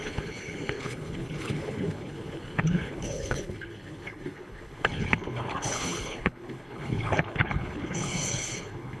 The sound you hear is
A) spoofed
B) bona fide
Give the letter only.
A